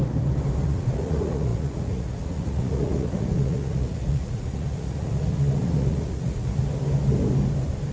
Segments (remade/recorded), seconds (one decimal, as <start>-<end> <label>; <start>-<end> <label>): 0.0-0.6 recorded; 0.6-6.6 remade; 6.6-7.9 recorded